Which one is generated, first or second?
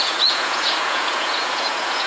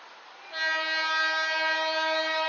first